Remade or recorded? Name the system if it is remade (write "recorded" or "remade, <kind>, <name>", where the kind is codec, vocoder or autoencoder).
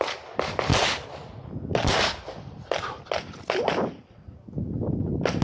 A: recorded